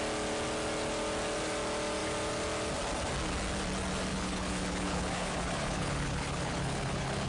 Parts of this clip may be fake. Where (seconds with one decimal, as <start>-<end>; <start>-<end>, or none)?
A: 4.1-7.3